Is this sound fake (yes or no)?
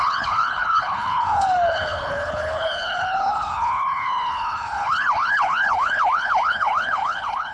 yes